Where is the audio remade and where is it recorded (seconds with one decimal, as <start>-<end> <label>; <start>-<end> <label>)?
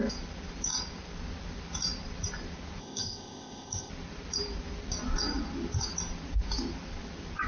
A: 0.0-2.8 recorded; 2.8-3.9 remade; 3.9-7.5 recorded